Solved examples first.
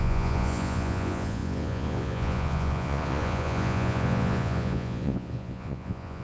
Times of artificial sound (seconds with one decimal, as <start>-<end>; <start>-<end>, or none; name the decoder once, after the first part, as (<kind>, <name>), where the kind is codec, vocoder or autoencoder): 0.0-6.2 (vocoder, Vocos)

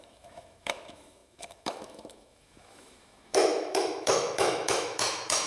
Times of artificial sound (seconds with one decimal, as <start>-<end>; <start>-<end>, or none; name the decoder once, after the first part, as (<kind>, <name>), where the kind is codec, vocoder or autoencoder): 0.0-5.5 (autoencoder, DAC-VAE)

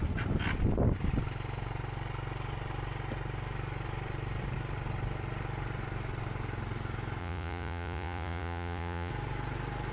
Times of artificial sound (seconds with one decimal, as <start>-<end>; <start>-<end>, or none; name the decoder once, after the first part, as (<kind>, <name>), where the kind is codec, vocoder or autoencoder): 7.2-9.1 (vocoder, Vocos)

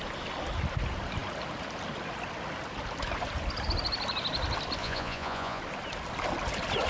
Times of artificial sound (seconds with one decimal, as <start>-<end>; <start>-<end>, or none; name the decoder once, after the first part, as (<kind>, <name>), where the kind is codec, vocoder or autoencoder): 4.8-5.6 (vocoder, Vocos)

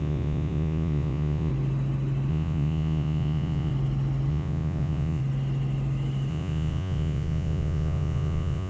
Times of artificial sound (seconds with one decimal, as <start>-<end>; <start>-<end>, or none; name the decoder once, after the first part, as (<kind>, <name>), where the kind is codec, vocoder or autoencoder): 0.0-1.5 (vocoder, Vocos); 2.3-3.7; 4.3-5.2; 6.3-8.7

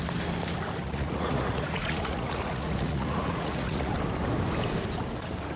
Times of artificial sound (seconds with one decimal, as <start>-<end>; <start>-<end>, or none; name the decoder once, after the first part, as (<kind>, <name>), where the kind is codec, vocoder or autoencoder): 0.8-3.9 (vocoder, Vocos)

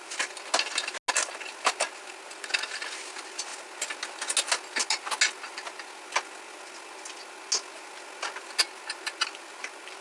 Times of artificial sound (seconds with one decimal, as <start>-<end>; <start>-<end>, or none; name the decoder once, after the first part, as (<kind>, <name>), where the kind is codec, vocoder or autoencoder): none

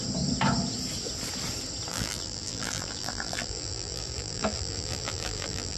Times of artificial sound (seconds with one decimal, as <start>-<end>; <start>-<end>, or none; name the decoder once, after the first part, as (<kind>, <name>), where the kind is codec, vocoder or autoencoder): 1.9-5.8 (vocoder, BigVGAN v2)